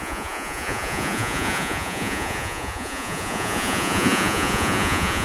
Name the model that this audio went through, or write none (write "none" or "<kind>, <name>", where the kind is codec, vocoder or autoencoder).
vocoder, Vocos